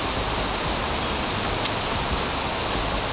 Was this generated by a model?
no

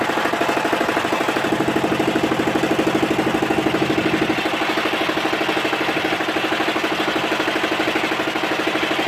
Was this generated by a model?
no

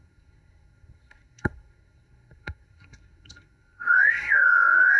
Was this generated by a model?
yes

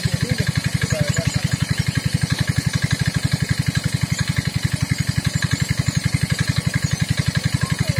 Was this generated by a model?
no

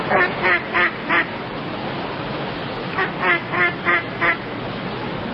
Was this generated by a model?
no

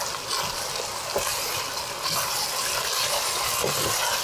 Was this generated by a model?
no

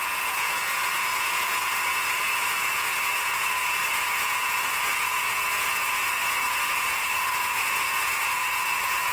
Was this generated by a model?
yes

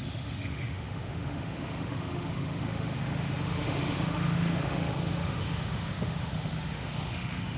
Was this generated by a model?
yes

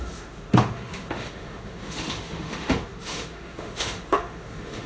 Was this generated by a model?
yes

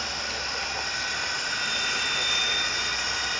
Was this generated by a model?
no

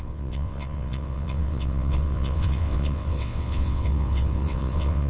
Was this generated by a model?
yes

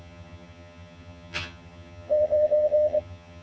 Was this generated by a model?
yes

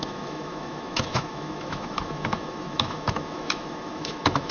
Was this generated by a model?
yes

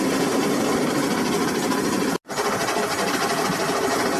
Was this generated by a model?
no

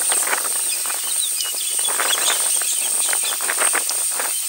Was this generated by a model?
no